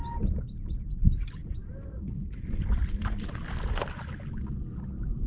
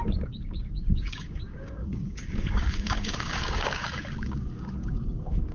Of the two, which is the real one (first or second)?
first